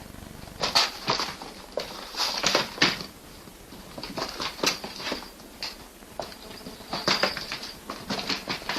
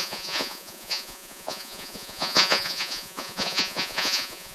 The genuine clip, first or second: first